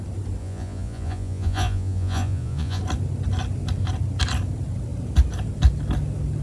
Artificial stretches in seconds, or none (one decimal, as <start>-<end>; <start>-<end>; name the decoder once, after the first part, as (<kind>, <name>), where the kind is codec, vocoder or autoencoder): 0.4-2.8 (vocoder, Vocos)